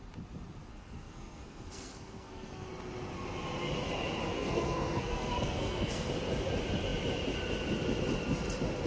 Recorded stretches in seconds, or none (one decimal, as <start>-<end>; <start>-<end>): 0.0-0.7; 2.7-4.3; 6.1-8.9